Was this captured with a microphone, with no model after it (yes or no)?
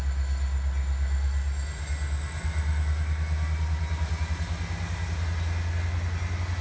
yes